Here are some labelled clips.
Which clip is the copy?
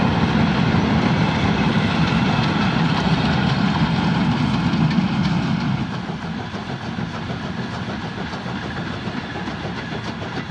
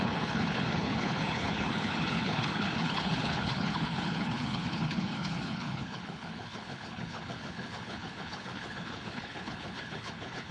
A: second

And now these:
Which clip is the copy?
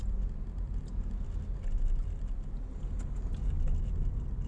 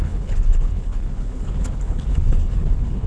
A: second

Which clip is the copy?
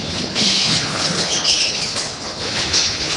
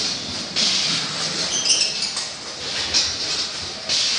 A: first